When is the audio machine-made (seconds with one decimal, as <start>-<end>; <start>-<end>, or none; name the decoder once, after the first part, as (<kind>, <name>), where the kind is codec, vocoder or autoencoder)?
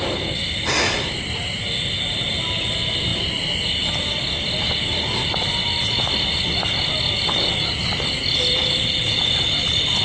none